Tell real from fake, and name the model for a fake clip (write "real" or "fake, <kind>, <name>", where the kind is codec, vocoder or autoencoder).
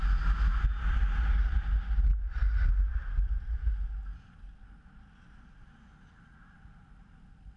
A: real